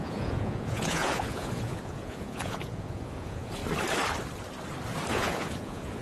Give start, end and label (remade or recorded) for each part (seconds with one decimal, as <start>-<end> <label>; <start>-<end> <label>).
0.0-3.6 remade; 3.6-5.1 recorded; 5.1-6.0 remade

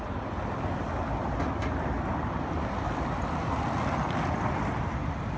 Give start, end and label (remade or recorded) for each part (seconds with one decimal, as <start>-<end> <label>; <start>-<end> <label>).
0.0-5.4 recorded

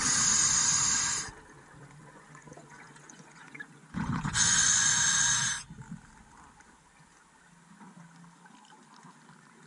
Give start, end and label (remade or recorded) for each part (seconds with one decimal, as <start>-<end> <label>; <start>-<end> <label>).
0.0-2.0 recorded; 2.0-4.9 remade; 4.9-9.7 recorded

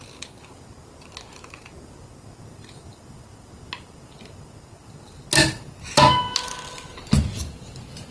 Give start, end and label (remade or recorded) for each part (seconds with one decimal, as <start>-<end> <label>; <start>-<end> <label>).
0.0-8.1 recorded

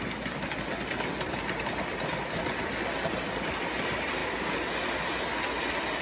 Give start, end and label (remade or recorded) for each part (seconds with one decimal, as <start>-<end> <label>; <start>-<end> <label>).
0.0-6.0 recorded

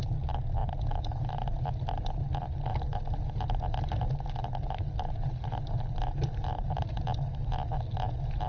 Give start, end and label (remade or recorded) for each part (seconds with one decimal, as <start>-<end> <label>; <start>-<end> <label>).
0.0-8.5 recorded

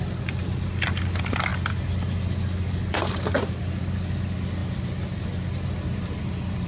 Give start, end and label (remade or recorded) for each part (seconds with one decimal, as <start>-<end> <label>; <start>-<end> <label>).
0.0-6.7 recorded